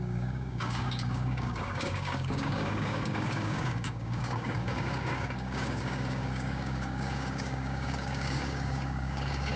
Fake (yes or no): yes